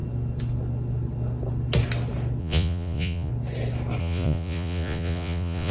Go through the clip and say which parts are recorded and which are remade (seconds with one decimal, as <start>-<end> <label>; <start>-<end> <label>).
0.0-2.4 recorded; 2.4-3.3 remade; 3.3-4.0 recorded; 4.0-5.7 remade